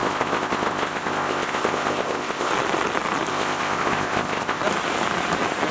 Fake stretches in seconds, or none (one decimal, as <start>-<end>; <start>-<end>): 0.0-2.5; 3.3-4.6